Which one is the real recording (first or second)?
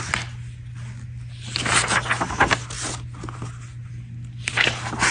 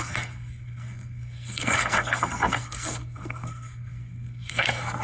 first